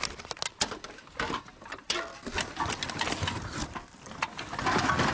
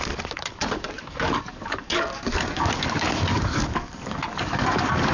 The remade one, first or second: second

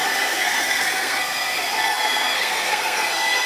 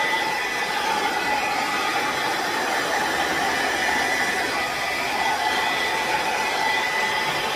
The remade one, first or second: first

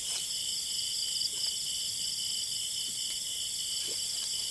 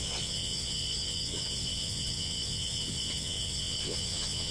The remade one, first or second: second